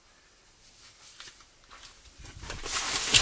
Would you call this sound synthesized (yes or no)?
no